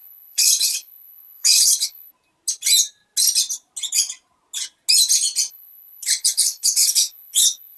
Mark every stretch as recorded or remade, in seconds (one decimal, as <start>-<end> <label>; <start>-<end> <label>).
0.0-2.1 remade; 2.1-5.5 recorded; 5.5-7.8 remade